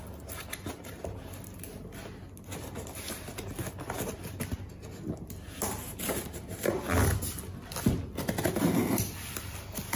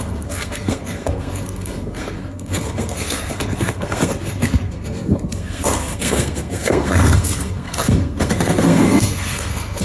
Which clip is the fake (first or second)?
second